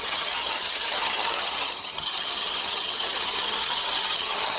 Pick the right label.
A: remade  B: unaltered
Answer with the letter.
A